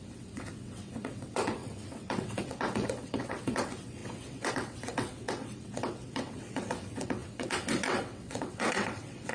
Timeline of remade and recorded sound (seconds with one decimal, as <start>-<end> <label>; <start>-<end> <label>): 0.0-9.3 remade

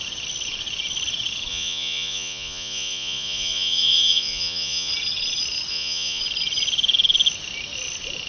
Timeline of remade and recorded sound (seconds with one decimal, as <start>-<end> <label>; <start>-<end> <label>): 0.0-1.5 recorded; 1.5-4.9 remade; 4.9-5.7 recorded; 5.7-6.2 remade; 6.2-8.3 recorded

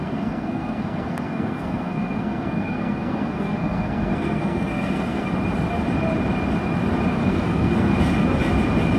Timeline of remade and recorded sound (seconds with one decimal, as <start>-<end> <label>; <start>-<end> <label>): 0.0-5.3 remade; 5.3-7.1 recorded; 7.1-7.9 remade; 7.9-9.0 recorded

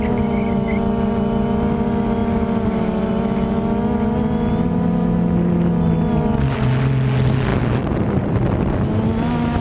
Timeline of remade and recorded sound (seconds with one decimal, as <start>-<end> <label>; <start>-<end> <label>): 0.0-9.6 recorded

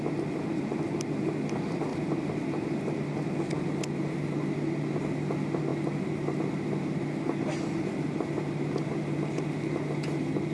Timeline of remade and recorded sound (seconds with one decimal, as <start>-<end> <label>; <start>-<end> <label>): 0.0-10.5 recorded

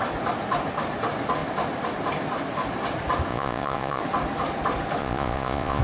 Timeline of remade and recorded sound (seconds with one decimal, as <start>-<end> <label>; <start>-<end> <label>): 0.0-3.3 recorded; 3.3-4.0 remade; 4.0-5.0 recorded; 5.0-5.8 remade

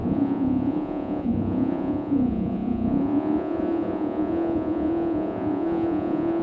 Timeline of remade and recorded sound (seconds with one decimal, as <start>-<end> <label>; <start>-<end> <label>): 0.0-6.4 remade